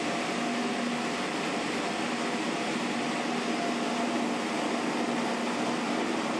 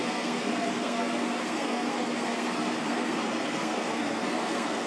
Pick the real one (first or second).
first